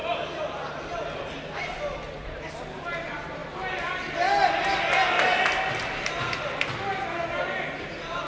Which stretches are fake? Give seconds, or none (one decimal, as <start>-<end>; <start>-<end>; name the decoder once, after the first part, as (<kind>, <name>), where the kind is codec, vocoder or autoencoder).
none